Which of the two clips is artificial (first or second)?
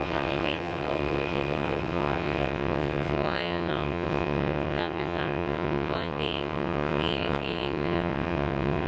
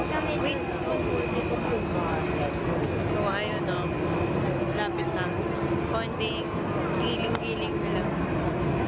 first